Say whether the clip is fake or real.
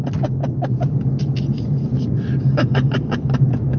real